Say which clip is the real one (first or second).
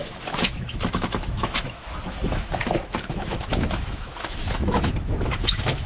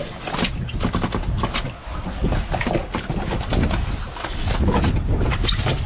second